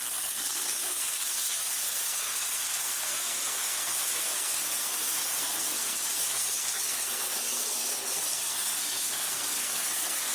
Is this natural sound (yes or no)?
no